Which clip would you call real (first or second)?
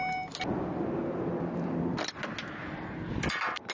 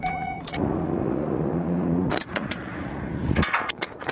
first